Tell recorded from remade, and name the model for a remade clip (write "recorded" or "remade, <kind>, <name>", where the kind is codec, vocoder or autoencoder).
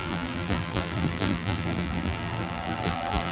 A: remade, vocoder, BigVGAN v2